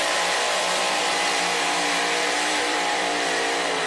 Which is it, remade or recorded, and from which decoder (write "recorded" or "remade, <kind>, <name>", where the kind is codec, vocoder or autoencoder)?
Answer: remade, vocoder, BigVGAN v2